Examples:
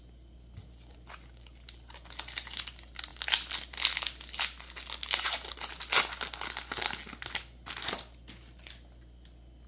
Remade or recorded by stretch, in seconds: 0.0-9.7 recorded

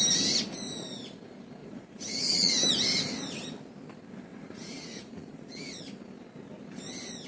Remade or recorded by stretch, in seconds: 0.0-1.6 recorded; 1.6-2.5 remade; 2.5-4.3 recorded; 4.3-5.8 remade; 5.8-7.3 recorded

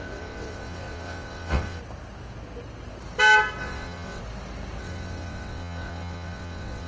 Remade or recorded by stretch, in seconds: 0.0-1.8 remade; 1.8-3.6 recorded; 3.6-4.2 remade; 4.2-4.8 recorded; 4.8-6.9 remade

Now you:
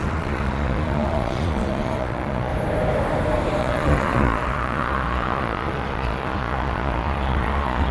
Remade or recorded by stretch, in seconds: 0.0-2.5 remade; 2.5-3.6 recorded; 3.6-7.9 remade